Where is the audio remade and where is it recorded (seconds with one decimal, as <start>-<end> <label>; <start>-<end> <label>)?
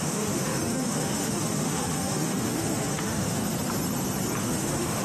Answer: 0.0-3.4 remade; 3.4-4.4 recorded; 4.4-5.0 remade